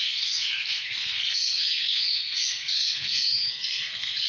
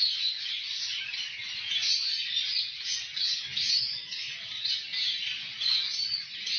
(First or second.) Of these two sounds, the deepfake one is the first